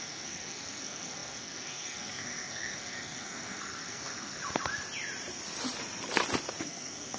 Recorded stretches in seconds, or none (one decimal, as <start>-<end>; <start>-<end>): 4.4-6.6